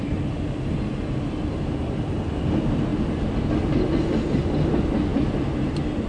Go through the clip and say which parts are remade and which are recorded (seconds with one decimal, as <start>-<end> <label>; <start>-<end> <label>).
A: 0.0-6.1 recorded